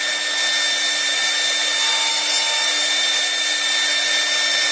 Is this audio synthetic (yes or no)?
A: no